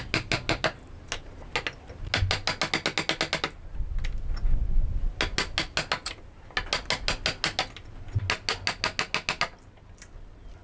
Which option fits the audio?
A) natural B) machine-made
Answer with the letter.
A